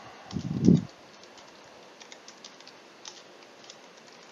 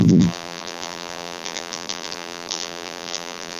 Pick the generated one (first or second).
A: second